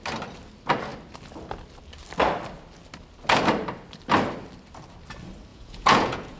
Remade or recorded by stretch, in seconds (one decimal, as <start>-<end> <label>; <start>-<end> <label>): 0.0-5.5 recorded; 5.5-6.4 remade